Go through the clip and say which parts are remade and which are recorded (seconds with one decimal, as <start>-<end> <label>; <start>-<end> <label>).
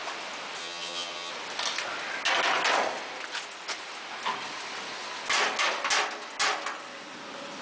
0.0-0.6 recorded; 0.6-1.3 remade; 1.3-7.6 recorded